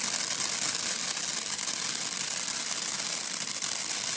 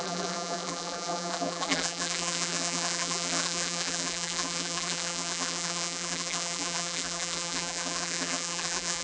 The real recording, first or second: first